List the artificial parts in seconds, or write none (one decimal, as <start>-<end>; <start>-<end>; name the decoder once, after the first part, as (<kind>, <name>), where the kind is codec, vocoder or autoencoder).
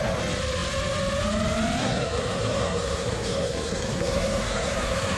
1.8-5.2 (codec, SNAC)